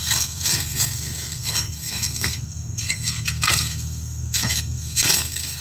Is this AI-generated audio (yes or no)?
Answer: yes